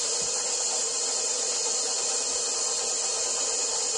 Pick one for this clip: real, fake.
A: real